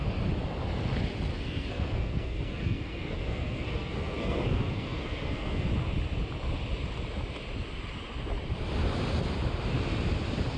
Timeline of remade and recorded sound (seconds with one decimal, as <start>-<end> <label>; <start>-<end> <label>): 0.0-1.3 recorded; 1.3-5.7 remade; 5.7-10.6 recorded